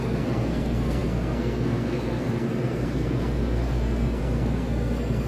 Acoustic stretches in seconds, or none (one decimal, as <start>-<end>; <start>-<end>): none